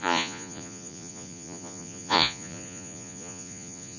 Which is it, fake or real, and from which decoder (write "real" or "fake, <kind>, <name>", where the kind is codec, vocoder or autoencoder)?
fake, vocoder, Vocos